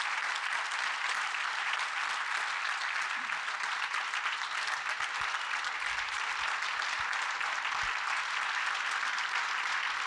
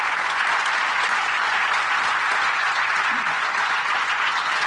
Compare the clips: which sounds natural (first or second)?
first